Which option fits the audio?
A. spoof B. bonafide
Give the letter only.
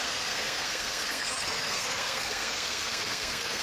A